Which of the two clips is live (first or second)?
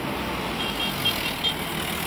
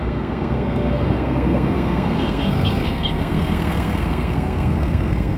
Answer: first